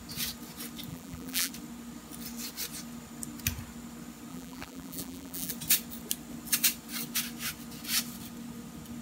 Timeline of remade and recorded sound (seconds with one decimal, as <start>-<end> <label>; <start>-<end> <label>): 0.0-0.9 recorded; 0.9-1.5 remade; 1.5-4.3 recorded; 4.3-5.5 remade; 5.5-9.0 recorded